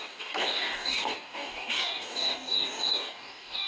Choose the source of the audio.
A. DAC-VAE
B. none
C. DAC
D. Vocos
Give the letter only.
C